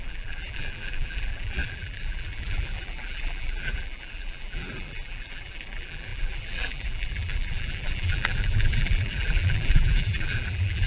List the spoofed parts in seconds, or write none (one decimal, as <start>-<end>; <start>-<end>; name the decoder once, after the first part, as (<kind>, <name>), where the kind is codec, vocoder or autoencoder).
0.0-10.9 (vocoder, BigVGAN v2)